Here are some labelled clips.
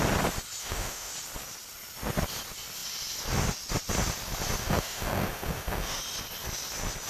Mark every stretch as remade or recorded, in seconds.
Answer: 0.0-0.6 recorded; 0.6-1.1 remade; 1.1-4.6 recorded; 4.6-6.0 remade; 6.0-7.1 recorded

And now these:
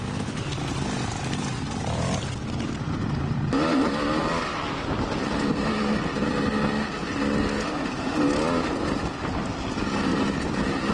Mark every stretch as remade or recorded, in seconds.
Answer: 0.0-10.9 recorded

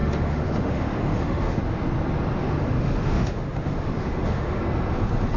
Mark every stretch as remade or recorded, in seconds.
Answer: 0.0-1.6 remade; 1.6-2.4 recorded; 2.4-4.6 remade; 4.6-5.4 recorded

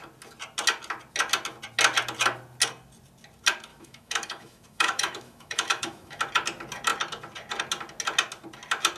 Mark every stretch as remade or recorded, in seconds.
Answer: 0.0-3.7 recorded; 3.7-6.2 remade; 6.2-9.0 recorded

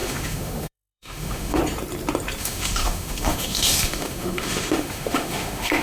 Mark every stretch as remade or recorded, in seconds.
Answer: 0.0-1.6 remade; 1.6-2.4 recorded; 2.4-5.8 remade

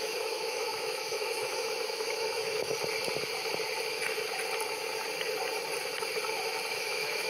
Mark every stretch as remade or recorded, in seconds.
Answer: 0.0-2.7 remade; 2.7-6.7 recorded; 6.7-7.3 remade

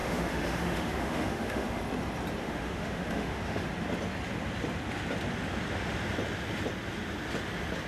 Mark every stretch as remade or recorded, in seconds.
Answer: 0.0-1.8 remade; 1.8-2.4 recorded; 2.4-3.7 remade; 3.7-7.9 recorded

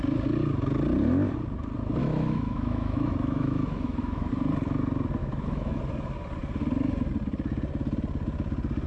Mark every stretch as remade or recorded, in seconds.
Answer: 0.0-2.0 recorded; 2.0-4.3 remade; 4.3-5.2 recorded; 5.2-5.8 remade; 5.8-8.9 recorded